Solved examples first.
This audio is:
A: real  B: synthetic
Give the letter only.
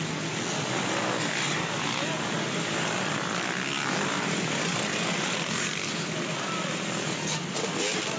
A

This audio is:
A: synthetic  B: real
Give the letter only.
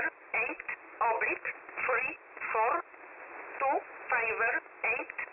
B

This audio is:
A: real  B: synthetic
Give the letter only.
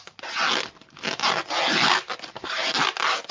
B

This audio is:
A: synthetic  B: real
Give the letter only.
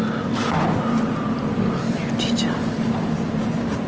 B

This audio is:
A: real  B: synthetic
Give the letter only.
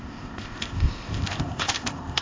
B